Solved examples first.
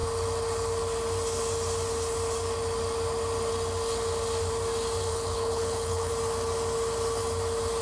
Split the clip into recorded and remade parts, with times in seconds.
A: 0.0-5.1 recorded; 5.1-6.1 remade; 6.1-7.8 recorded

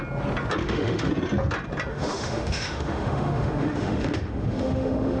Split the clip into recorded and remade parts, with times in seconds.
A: 0.0-0.6 recorded; 0.6-1.1 remade; 1.1-1.9 recorded; 1.9-5.2 remade

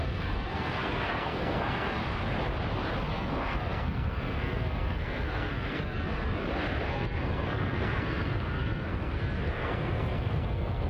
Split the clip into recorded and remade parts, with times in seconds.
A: 0.0-2.0 remade; 2.0-3.1 recorded; 3.1-6.4 remade; 6.4-6.9 recorded; 6.9-10.9 remade

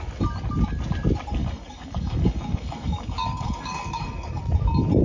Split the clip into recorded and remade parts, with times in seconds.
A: 0.0-1.4 recorded; 1.4-4.4 remade; 4.4-5.0 recorded

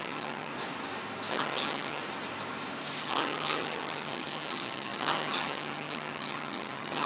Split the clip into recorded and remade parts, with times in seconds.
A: 0.0-0.5 remade; 0.5-1.3 recorded; 1.3-2.0 remade; 2.0-3.0 recorded; 3.0-7.1 remade